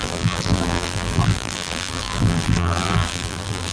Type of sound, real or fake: fake